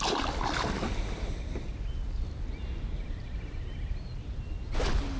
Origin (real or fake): real